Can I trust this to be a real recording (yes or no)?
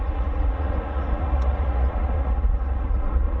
no